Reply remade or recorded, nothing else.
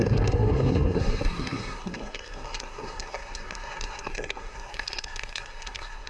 remade